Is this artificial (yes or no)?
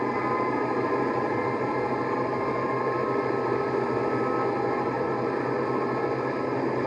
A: no